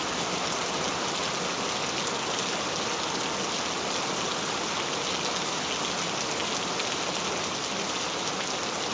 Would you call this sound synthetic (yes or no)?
no